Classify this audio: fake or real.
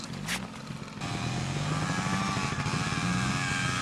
real